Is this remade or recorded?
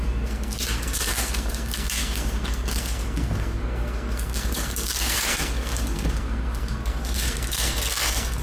remade